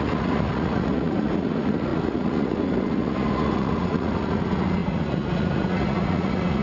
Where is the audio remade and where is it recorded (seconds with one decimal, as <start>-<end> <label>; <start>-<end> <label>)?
0.0-6.6 remade